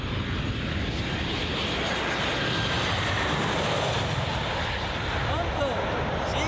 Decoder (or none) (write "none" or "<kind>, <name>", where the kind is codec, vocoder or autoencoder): none